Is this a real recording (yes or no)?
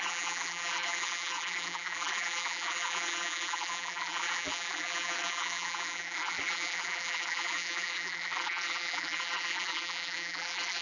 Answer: no